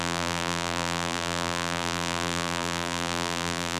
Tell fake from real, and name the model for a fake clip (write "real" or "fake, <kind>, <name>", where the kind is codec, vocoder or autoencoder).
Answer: fake, vocoder, BigVGAN v2